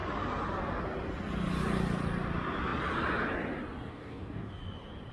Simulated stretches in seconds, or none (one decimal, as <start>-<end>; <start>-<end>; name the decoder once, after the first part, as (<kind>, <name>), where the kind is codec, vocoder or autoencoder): 3.9-4.5 (codec, DAC)